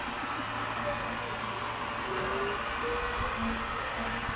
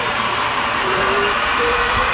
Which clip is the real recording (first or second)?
first